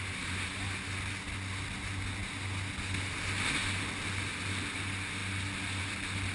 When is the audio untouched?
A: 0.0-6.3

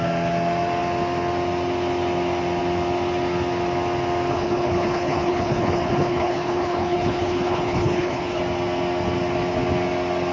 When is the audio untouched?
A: 0.0-4.3; 8.4-10.3

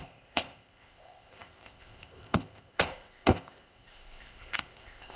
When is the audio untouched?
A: none

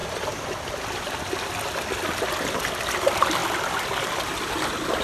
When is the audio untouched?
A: 1.0-3.4